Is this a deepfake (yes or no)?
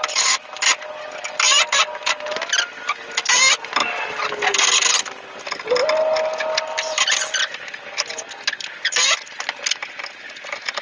no